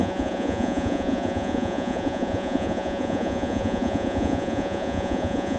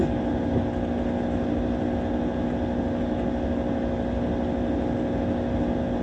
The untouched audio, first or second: second